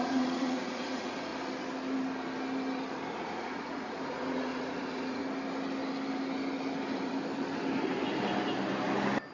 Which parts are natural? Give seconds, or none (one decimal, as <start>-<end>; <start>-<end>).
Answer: 1.3-3.1; 5.2-9.3